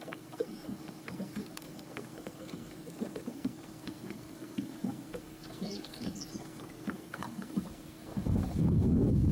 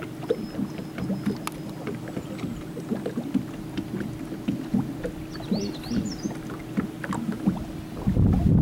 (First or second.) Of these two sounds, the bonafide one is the second